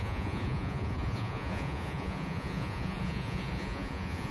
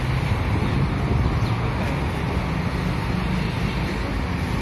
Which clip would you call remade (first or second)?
first